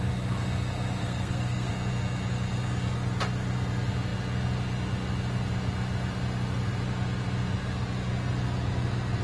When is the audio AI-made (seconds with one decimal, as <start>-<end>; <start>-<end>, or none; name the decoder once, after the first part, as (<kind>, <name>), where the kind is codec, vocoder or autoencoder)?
1.0-1.7 (codec, SNAC)